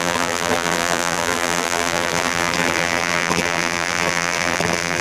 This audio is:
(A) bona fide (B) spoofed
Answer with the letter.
B